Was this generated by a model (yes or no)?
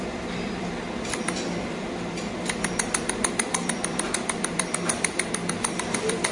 yes